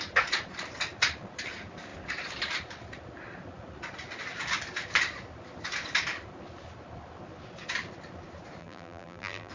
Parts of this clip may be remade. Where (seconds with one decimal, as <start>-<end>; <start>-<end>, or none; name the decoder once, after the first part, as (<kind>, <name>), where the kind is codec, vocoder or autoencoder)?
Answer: 8.6-9.5 (vocoder, BigVGAN v2)